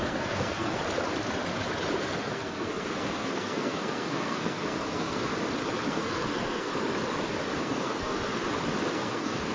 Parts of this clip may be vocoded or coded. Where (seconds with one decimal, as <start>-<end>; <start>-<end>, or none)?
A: 0.0-0.8; 2.0-5.3; 5.9-6.7; 7.6-8.3; 8.9-9.5